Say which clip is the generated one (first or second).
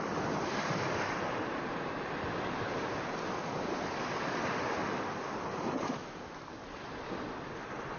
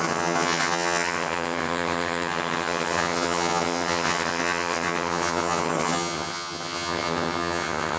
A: second